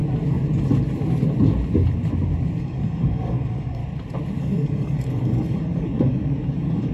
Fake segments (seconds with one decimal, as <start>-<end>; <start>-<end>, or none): 2.6-3.8; 4.4-6.9